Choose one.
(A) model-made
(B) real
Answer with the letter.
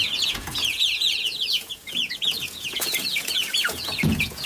A